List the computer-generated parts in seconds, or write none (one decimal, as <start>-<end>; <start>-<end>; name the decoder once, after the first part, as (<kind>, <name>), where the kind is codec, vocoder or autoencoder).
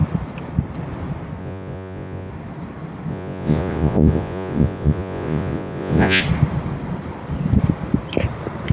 1.4-2.3 (vocoder, Vocos); 3.1-6.2